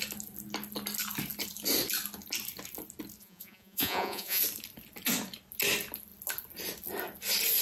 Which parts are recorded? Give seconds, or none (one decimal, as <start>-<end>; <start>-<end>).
0.0-3.2; 4.4-7.6